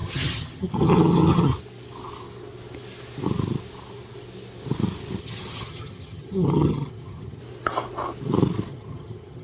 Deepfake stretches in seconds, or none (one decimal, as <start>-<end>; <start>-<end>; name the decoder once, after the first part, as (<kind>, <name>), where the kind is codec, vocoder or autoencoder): 0.0-1.5 (vocoder, HiFi-GAN); 5.2-7.4; 8.7-9.4